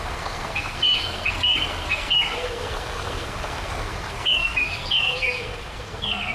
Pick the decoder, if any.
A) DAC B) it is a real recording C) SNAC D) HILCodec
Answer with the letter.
C